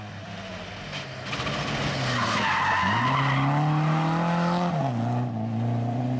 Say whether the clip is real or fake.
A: real